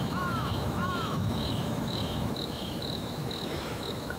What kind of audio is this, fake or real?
fake